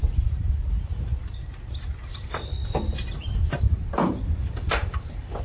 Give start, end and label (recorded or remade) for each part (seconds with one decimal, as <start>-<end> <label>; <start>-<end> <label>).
0.0-2.1 recorded; 2.1-5.4 remade